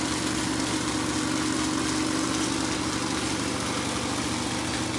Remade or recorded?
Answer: recorded